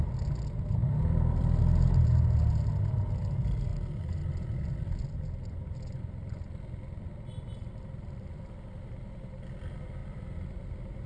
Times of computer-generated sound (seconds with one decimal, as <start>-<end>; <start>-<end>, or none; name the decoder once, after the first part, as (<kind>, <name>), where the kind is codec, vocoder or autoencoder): 0.8-1.6 (vocoder, BigVGAN v2); 10.0-10.7